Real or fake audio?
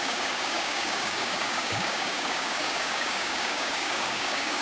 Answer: fake